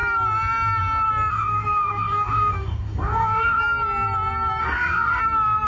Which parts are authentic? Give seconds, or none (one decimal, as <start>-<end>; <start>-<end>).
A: 0.0-1.3; 3.6-4.6; 5.2-5.7